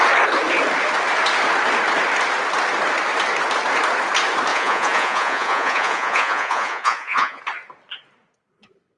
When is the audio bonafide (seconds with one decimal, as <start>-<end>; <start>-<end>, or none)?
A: 0.0-4.5; 7.4-9.0